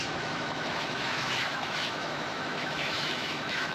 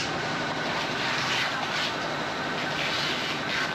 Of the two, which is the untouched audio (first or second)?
second